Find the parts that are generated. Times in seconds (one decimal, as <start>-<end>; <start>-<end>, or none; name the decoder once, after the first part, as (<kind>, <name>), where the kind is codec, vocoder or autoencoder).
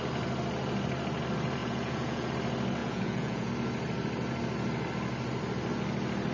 1.6-2.3 (vocoder, Vocos); 2.8-3.5